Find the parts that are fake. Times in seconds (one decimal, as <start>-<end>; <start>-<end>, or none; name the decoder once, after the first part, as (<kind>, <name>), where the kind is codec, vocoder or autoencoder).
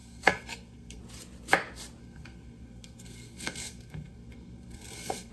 0.0-1.0 (codec, SNAC); 2.0-5.3